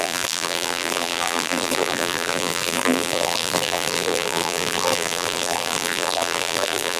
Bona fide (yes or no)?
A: no